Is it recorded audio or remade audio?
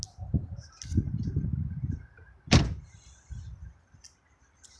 recorded